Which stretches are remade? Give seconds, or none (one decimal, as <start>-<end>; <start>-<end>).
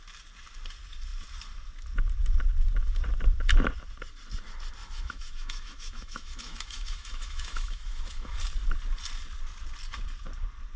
4.8-8.4